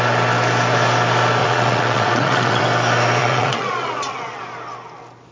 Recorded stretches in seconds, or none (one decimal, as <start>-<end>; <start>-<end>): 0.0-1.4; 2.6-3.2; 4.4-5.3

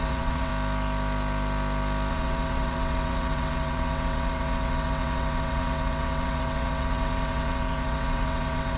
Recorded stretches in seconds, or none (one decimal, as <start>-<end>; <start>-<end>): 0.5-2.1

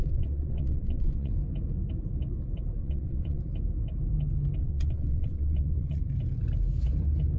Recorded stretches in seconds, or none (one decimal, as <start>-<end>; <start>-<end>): 1.3-2.8; 3.4-4.6; 6.0-7.4

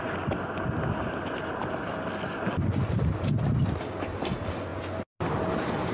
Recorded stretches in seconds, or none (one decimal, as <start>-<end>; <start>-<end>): 0.0-5.9